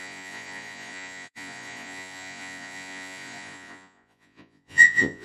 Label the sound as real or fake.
fake